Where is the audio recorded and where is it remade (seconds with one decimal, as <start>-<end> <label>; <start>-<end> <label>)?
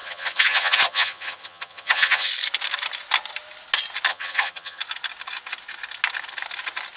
0.0-2.3 remade; 2.3-4.1 recorded; 4.1-4.8 remade; 4.8-7.0 recorded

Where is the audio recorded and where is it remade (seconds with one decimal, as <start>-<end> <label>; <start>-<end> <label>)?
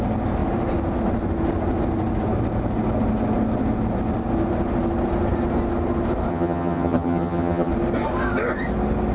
0.0-6.3 recorded; 6.3-7.7 remade; 7.7-9.1 recorded